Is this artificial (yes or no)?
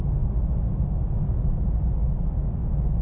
no